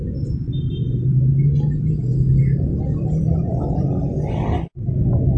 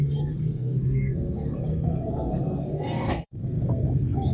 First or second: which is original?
first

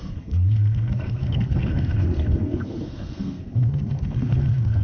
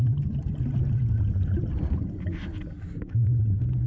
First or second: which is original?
second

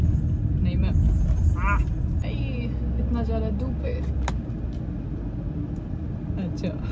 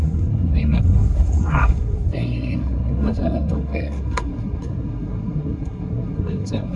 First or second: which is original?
first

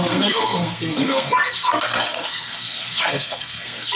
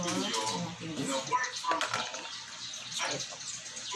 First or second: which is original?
second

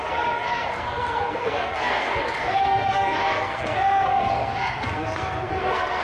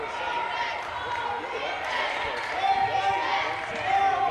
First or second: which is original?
second